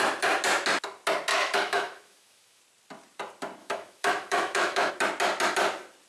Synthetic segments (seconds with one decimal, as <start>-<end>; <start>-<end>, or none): 1.3-2.6; 3.6-4.9